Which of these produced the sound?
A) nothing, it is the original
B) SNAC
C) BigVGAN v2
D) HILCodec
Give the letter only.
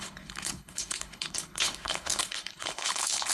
D